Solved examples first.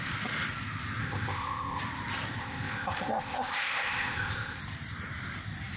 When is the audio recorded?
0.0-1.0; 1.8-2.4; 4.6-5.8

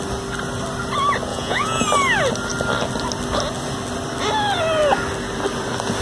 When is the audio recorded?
0.0-1.3; 1.8-6.0

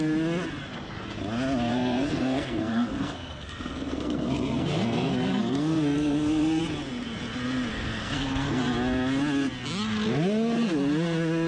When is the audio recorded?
0.0-1.7; 6.6-7.7; 8.6-11.5

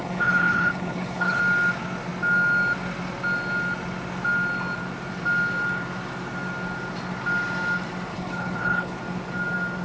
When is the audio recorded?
1.4-8.1; 9.0-9.8

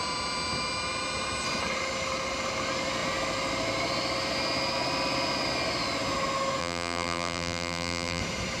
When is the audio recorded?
0.0-6.6; 8.2-8.6

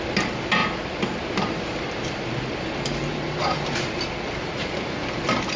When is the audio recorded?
0.0-0.6; 2.6-3.4; 4.0-5.6

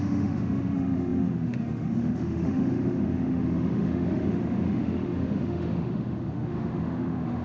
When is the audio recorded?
none